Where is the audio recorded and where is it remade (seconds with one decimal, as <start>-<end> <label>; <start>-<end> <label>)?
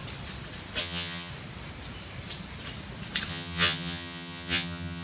0.0-0.8 recorded; 0.8-1.3 remade; 1.3-3.3 recorded; 3.3-5.0 remade